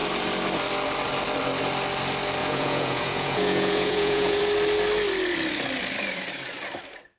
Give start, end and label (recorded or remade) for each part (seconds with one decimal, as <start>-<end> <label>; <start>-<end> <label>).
0.0-2.4 recorded; 2.4-4.4 remade; 4.4-7.2 recorded